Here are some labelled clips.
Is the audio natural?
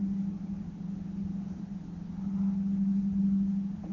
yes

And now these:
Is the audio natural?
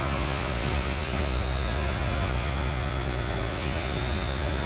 no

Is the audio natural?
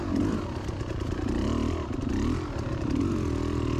yes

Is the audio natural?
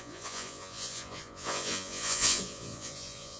no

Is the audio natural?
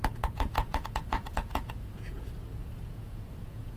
no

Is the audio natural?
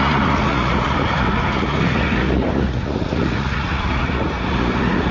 no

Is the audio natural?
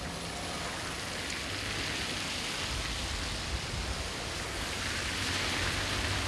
yes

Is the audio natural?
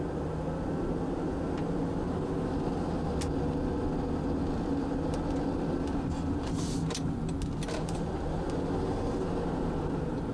yes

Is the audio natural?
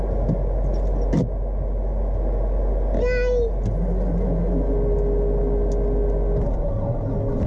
yes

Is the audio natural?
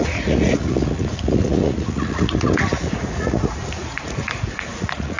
no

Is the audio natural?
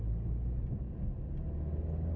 yes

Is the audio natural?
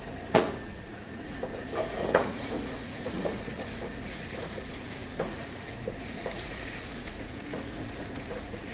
no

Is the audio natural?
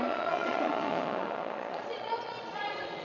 no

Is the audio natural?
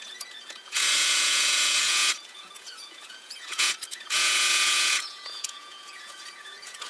no